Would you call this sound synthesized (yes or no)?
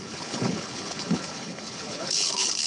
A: yes